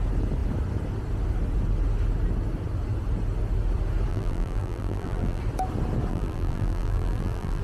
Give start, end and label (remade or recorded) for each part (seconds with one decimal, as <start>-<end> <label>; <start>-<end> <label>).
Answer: 0.0-4.1 recorded; 4.1-5.4 remade; 5.4-6.1 recorded; 6.1-7.6 remade